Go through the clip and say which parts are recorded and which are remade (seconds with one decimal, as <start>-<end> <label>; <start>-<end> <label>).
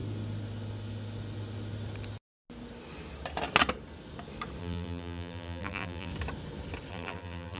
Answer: 0.0-4.6 recorded; 4.6-6.1 remade; 6.1-6.9 recorded; 6.9-7.6 remade